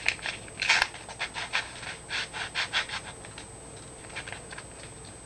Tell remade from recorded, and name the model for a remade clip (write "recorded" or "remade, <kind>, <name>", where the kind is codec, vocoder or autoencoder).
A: recorded